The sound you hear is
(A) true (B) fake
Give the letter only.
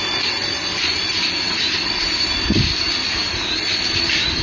A